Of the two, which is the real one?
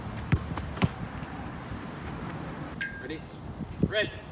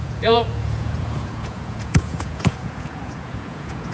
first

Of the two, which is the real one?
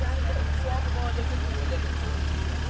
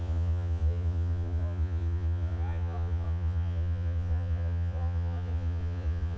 first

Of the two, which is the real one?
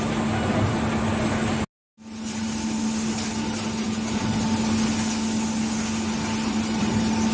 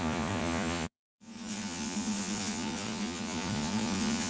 first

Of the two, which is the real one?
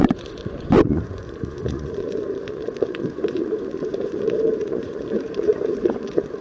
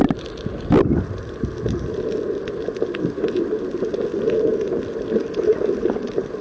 second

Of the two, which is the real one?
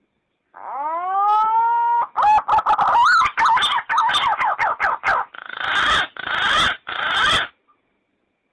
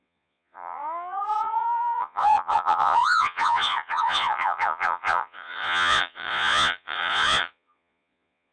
first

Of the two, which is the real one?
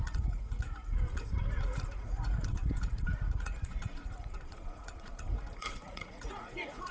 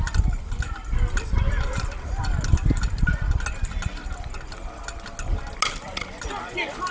second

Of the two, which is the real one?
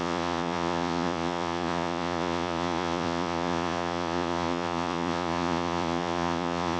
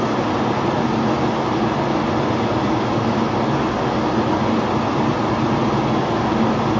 second